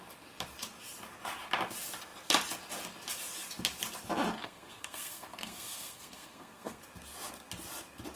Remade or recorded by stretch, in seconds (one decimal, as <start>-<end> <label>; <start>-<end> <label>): 0.0-4.4 recorded; 4.4-6.8 remade; 6.8-8.2 recorded